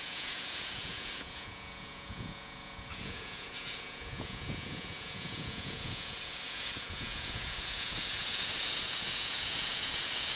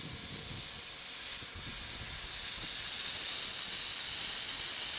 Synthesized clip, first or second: first